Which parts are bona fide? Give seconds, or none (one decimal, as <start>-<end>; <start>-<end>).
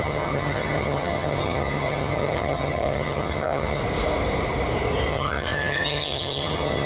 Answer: 3.8-5.1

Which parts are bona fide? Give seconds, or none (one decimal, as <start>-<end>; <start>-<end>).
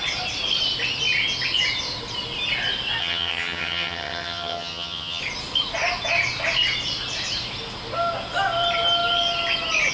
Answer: 0.0-3.0; 5.2-9.9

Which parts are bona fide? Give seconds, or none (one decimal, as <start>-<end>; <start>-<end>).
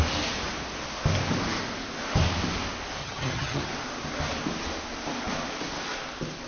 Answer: 0.0-3.0; 3.7-6.5